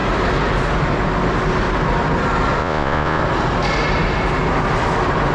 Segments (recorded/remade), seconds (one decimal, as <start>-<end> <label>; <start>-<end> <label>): 0.0-2.6 recorded; 2.6-3.2 remade; 3.2-5.3 recorded

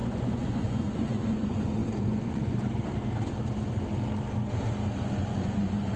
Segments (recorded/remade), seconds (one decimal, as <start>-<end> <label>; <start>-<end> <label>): 0.0-2.9 remade; 2.9-5.3 recorded; 5.3-6.0 remade

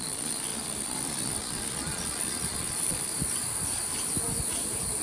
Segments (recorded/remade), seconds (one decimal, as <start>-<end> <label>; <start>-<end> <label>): 0.0-3.1 remade; 3.1-5.0 recorded

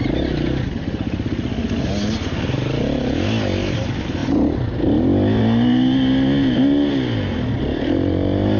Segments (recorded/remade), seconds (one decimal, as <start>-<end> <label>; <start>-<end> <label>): 0.0-8.6 recorded

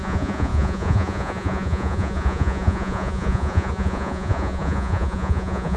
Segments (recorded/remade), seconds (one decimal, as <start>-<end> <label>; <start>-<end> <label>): 0.0-5.8 remade